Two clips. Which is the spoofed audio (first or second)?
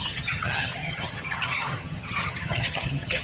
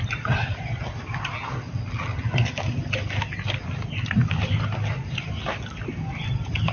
first